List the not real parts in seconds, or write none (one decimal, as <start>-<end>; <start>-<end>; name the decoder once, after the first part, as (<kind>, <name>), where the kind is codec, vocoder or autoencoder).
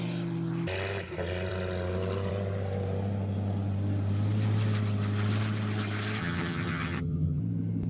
6.2-7.4 (vocoder, HiFi-GAN)